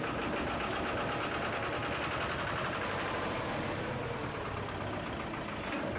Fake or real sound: real